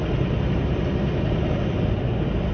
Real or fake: real